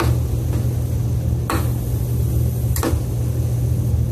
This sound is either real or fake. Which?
real